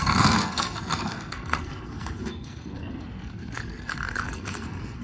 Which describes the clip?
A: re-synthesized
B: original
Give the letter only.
A